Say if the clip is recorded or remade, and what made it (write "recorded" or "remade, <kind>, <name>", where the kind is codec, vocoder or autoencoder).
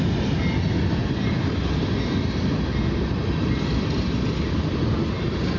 recorded